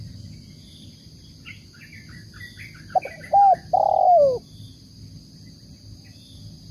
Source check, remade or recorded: recorded